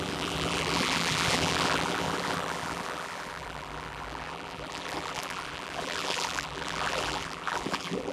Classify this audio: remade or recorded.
remade